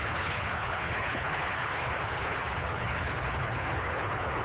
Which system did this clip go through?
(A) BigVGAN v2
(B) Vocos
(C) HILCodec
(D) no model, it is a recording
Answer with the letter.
C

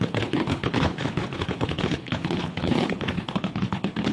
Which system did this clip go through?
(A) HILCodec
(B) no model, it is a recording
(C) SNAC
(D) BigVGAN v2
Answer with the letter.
A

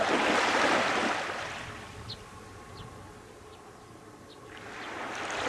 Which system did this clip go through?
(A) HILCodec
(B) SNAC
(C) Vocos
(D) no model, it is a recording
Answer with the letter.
D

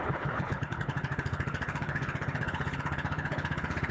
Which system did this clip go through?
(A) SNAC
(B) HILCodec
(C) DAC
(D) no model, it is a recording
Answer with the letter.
B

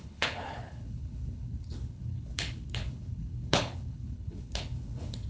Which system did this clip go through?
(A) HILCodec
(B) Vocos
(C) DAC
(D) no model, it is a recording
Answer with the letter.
A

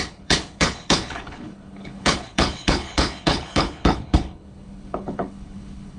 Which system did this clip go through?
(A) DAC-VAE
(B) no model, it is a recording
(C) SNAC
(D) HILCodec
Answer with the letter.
D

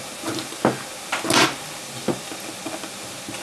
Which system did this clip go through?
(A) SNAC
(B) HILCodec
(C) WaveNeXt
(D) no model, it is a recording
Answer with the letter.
D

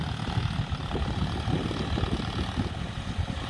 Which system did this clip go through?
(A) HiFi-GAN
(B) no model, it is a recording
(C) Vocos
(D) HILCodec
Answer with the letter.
B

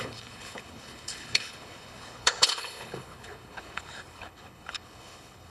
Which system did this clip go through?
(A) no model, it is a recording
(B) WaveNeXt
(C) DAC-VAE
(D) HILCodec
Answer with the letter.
D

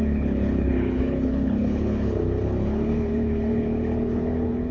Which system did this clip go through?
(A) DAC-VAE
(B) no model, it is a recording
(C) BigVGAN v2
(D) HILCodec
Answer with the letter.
D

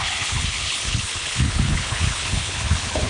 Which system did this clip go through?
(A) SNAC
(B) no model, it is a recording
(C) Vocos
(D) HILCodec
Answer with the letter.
D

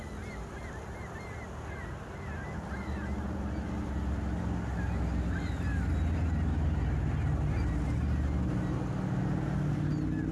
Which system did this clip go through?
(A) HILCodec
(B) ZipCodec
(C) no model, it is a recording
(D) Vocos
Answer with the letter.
C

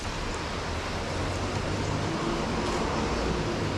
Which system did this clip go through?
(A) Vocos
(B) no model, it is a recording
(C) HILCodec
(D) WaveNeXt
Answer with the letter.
B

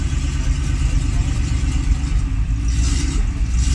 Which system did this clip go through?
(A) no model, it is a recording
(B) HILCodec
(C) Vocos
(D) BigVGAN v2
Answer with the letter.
A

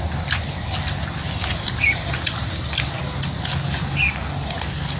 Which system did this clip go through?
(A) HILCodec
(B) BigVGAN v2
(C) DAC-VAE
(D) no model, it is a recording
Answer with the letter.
D